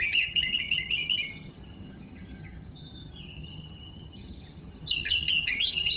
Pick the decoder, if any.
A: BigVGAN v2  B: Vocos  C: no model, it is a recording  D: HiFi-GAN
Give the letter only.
D